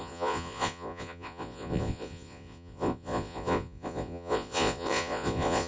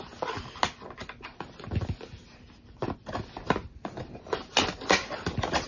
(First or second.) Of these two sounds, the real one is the second